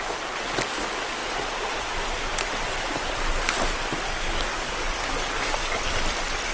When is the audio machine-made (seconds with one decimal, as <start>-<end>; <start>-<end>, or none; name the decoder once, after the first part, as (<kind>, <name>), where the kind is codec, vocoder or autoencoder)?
4.1-5.8 (codec, DAC)

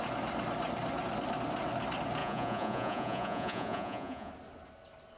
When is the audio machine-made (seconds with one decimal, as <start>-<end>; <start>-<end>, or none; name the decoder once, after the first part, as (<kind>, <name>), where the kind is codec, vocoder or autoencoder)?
2.2-4.3 (vocoder, Vocos)

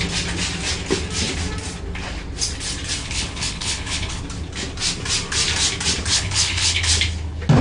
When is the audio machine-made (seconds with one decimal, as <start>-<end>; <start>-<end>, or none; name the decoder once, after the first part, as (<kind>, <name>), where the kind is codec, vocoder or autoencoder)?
3.0-4.2 (codec, HILCodec); 6.1-6.9

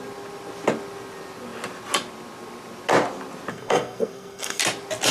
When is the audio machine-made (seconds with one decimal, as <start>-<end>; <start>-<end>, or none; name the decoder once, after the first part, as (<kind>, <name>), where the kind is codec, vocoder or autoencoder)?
3.5-4.6 (codec, SNAC)

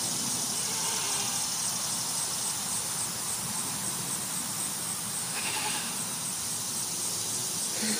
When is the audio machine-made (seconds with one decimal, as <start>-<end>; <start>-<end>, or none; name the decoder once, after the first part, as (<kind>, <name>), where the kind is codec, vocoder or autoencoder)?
5.2-5.9 (autoencoder, DAC-VAE)

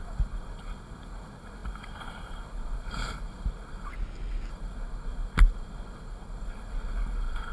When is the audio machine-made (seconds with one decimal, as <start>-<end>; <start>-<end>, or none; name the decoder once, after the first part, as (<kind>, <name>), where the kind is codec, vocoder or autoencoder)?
0.0-3.9 (codec, HILCodec); 4.5-7.5